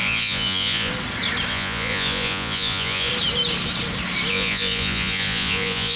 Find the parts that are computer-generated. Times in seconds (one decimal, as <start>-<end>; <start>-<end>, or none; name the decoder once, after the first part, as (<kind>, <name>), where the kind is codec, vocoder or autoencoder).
0.0-0.9 (vocoder, Vocos); 1.5-3.1; 4.3-6.0